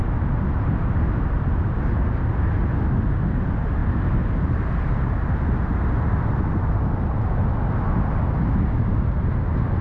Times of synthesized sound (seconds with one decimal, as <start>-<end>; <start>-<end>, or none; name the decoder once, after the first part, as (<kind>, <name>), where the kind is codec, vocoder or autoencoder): none